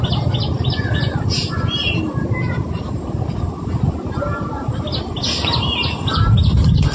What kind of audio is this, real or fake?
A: real